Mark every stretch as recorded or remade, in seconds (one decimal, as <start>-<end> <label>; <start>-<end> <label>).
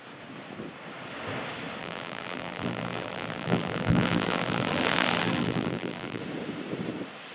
0.0-1.8 recorded; 1.8-6.2 remade; 6.2-7.3 recorded